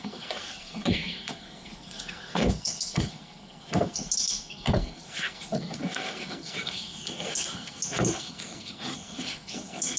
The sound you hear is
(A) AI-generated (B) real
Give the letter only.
A